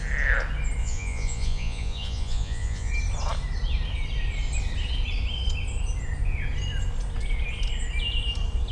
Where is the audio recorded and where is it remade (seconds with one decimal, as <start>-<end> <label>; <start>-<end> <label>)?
0.0-0.8 recorded; 0.8-2.9 remade; 2.9-8.7 recorded